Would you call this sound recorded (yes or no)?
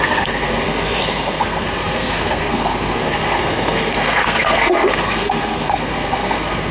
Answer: no